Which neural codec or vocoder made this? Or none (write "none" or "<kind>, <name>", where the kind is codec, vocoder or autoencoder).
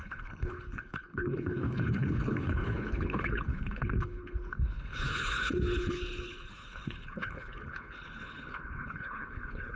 codec, HILCodec